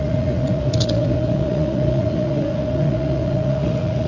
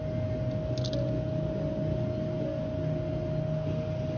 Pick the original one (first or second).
second